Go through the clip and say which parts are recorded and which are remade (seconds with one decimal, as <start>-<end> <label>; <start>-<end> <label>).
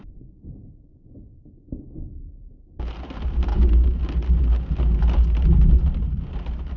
0.0-3.5 recorded; 3.5-4.0 remade; 4.0-6.8 recorded